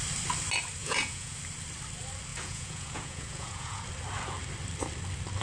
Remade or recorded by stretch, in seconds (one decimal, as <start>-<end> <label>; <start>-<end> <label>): 0.0-0.8 recorded; 0.8-1.4 remade; 1.4-2.3 recorded; 2.3-3.8 remade; 3.8-5.4 recorded